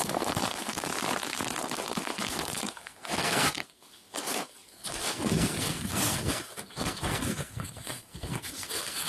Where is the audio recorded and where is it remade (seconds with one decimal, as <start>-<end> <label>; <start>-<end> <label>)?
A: 0.0-0.9 remade; 0.9-1.6 recorded; 1.6-9.1 remade